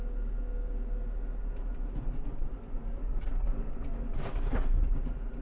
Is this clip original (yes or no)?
yes